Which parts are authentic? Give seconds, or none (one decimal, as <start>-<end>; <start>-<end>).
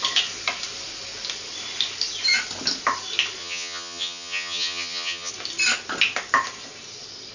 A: 0.0-3.4; 5.3-7.3